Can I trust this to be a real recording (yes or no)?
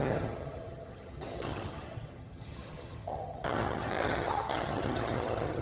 no